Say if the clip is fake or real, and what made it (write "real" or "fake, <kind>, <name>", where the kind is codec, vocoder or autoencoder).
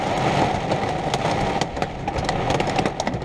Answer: real